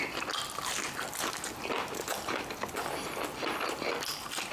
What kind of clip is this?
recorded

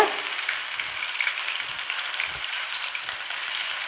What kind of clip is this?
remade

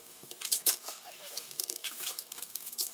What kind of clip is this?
remade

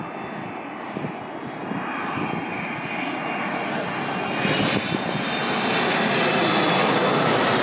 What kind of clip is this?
recorded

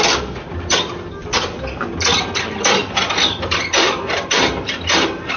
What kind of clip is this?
recorded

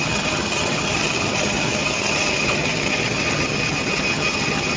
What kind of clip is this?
remade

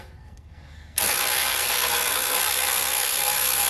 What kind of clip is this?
remade